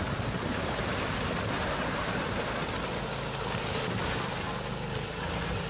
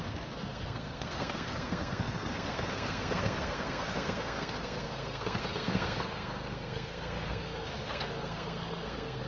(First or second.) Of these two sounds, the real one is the first